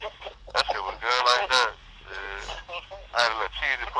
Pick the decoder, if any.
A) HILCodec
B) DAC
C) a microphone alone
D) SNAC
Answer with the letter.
B